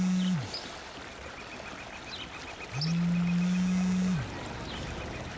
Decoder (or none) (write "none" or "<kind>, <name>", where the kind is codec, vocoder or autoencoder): none